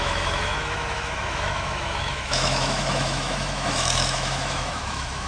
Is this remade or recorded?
remade